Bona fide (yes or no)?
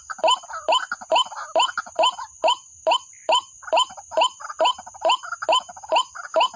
no